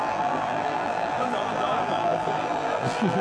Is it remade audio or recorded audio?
remade